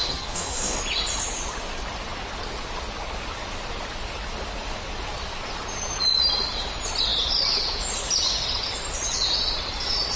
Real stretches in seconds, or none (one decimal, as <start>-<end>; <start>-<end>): 0.8-10.2